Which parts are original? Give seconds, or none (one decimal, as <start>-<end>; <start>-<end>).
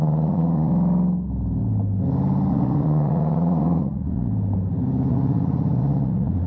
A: 0.7-2.5; 4.3-5.1